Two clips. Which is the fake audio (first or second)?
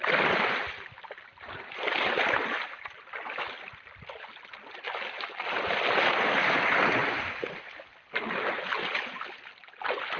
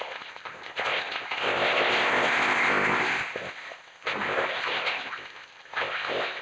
second